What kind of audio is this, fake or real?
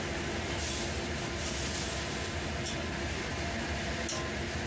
real